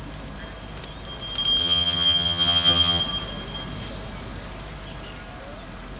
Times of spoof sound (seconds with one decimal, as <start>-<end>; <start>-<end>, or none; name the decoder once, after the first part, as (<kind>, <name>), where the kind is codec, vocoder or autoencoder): 1.6-3.0 (vocoder, HiFi-GAN)